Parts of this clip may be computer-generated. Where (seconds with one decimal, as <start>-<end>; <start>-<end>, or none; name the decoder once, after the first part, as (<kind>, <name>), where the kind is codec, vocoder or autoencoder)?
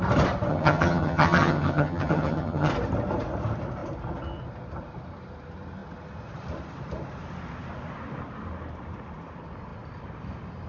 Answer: 0.5-2.7 (vocoder, HiFi-GAN)